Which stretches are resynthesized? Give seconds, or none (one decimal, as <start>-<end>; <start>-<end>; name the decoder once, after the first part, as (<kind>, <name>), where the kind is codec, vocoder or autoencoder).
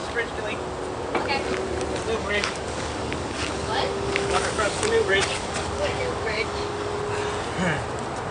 2.2-7.0 (codec, DAC)